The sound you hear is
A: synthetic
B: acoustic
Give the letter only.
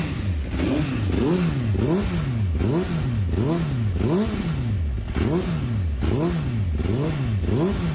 B